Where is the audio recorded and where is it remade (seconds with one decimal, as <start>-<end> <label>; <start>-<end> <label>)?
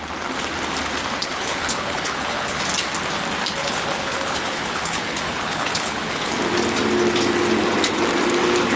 0.0-1.2 recorded; 1.2-2.6 remade; 2.6-3.5 recorded; 3.5-6.3 remade; 6.3-8.8 recorded